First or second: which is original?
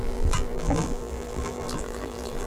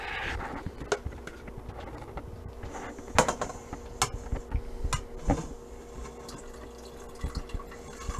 second